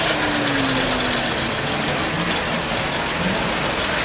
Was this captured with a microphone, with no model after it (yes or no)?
yes